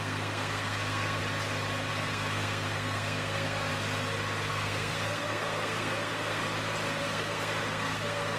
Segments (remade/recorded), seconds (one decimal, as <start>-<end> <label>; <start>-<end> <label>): 0.0-1.2 remade; 1.2-1.9 recorded; 1.9-3.7 remade; 3.7-4.5 recorded; 4.5-6.4 remade; 6.4-7.0 recorded; 7.0-8.4 remade